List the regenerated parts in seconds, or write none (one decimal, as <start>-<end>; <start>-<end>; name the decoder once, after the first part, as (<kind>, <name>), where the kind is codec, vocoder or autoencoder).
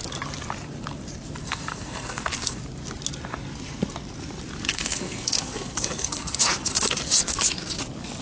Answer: 1.4-2.6 (codec, SNAC); 4.7-7.0